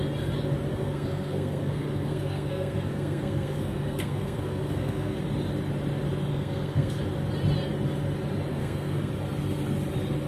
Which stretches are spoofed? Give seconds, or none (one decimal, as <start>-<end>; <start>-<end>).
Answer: 0.7-5.2; 6.3-7.0; 8.5-9.1